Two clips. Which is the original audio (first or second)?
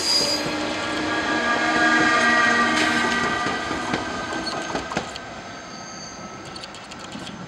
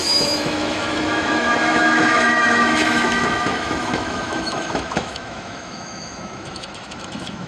first